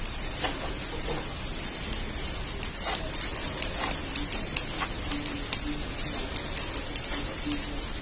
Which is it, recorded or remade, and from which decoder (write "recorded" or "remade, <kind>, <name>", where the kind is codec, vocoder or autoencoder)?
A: recorded